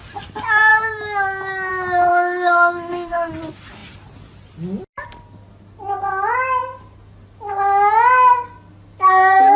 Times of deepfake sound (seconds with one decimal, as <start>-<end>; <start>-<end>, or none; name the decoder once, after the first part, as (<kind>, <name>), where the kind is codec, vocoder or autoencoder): 2.1-3.3 (autoencoder, DAC-VAE)